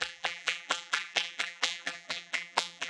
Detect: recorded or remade remade